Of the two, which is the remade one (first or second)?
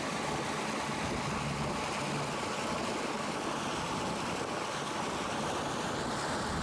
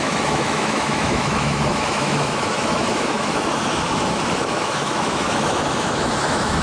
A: second